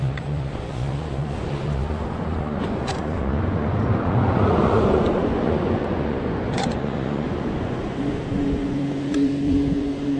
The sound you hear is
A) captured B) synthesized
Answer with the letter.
B